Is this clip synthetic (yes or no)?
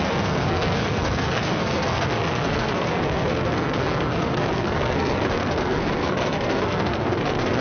yes